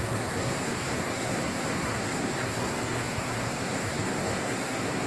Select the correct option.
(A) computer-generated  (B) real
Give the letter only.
A